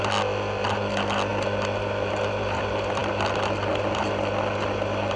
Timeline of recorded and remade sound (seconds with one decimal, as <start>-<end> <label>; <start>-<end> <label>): 0.0-5.2 recorded